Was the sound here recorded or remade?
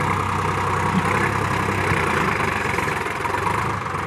recorded